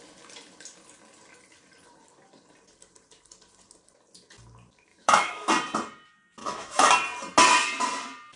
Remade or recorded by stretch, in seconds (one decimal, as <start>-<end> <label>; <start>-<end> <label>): 0.0-4.9 recorded; 4.9-5.5 remade; 5.5-6.4 recorded; 6.4-6.9 remade; 6.9-8.4 recorded